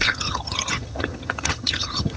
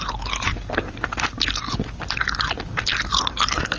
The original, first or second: second